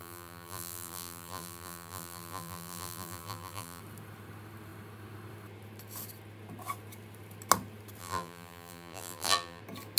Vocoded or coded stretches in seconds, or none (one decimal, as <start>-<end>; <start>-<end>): 0.0-3.8; 8.0-9.6